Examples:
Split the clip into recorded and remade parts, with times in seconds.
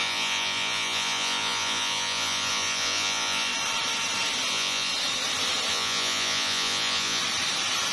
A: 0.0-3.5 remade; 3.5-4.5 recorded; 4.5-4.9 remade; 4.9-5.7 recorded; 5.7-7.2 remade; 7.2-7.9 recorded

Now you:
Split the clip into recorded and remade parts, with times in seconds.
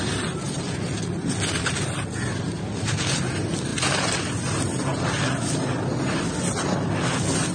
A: 0.0-7.5 recorded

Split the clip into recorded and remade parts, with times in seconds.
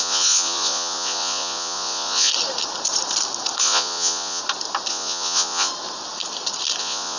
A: 0.0-2.3 remade; 2.3-3.6 recorded; 3.6-4.4 remade; 4.4-4.9 recorded; 4.9-5.7 remade; 5.7-6.8 recorded; 6.8-7.2 remade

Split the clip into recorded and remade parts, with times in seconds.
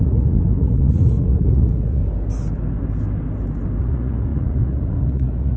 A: 0.0-2.0 remade; 2.0-3.8 recorded; 3.8-5.6 remade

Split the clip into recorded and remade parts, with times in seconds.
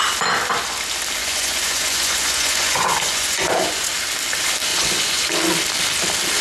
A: 0.0-1.2 recorded; 1.2-3.9 remade; 3.9-4.7 recorded; 4.7-5.3 remade; 5.3-6.4 recorded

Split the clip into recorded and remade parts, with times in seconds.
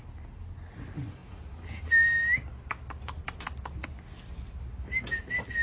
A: 0.0-5.6 recorded